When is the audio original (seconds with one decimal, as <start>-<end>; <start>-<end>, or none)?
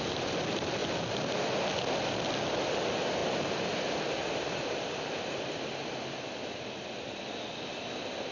0.0-3.2; 6.5-8.3